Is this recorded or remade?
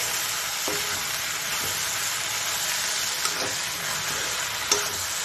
recorded